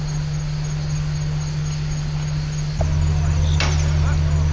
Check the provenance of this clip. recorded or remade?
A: recorded